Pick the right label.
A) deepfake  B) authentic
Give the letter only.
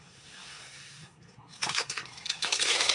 A